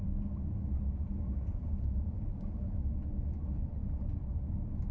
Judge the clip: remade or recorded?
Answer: recorded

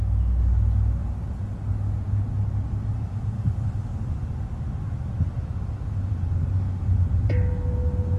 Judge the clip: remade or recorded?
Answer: recorded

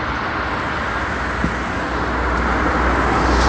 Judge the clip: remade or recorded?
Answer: recorded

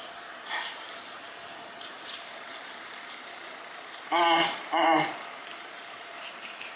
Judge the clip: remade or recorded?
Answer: remade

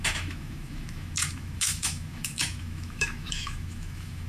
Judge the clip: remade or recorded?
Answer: remade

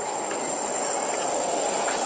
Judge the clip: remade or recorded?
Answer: recorded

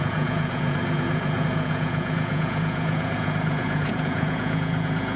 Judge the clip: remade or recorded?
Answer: remade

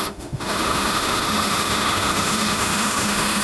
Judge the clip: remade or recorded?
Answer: remade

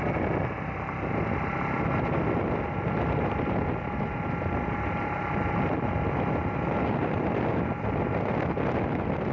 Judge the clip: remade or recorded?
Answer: recorded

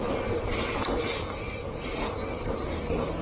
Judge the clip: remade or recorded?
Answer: recorded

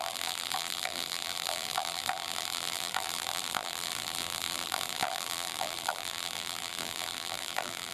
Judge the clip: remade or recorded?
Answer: remade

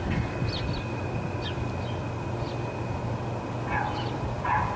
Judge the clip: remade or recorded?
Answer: recorded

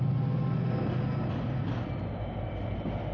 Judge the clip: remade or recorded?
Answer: recorded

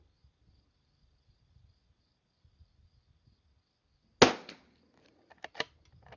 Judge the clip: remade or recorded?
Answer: recorded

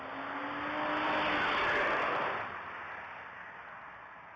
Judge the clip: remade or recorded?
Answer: recorded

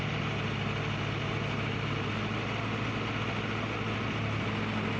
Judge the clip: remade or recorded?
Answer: recorded